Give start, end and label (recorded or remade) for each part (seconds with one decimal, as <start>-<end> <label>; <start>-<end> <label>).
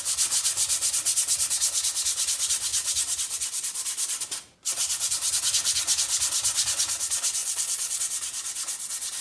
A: 0.0-7.4 recorded; 7.4-8.0 remade; 8.0-9.2 recorded